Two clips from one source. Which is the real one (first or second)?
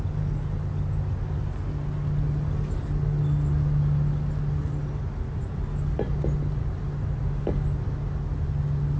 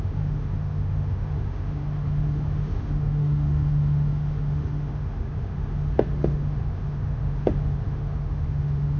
first